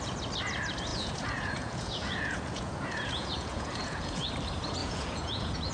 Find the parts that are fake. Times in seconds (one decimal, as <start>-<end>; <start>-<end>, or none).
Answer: 0.9-4.3; 4.8-5.7